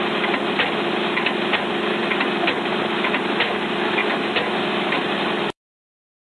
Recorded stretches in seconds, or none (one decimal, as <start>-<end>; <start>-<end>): 0.0-4.0